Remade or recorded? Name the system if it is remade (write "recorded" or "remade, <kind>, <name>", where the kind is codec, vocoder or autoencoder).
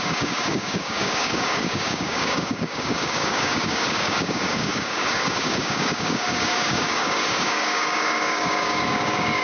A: remade, codec, DAC